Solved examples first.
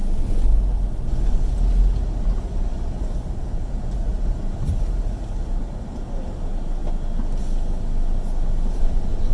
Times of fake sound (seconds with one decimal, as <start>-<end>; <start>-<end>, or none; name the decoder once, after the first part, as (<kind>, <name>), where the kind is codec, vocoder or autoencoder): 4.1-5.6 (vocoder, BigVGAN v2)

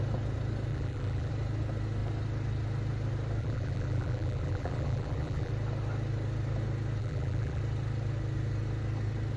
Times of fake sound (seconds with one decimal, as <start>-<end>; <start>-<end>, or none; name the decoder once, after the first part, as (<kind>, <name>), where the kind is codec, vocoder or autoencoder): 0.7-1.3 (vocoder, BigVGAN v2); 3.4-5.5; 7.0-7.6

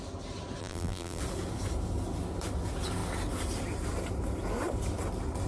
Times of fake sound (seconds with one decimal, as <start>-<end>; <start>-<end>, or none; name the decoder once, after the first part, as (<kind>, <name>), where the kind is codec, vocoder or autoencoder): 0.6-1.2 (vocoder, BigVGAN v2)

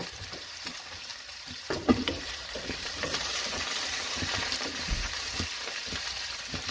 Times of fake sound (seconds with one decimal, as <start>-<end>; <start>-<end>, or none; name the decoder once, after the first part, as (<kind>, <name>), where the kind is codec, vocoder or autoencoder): 0.0-6.7 (vocoder, BigVGAN v2)